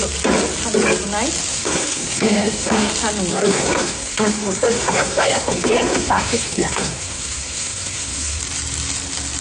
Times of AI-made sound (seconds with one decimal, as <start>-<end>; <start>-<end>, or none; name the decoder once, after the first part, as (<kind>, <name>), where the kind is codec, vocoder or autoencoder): 1.5-2.9 (codec, SNAC); 3.3-8.4

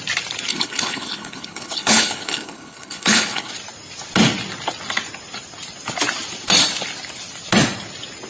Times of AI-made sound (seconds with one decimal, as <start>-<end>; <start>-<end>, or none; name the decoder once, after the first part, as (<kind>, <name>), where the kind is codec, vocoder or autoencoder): 0.5-3.5 (codec, HILCodec)

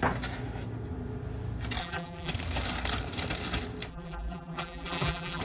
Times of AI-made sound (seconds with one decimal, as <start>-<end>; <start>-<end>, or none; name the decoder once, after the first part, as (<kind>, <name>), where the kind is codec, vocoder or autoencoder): 1.8-2.3 (vocoder, BigVGAN v2); 3.9-5.4

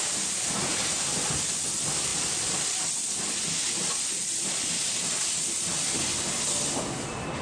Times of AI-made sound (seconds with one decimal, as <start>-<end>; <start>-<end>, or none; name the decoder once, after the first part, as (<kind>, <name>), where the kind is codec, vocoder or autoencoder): 2.1-6.3 (vocoder, BigVGAN v2)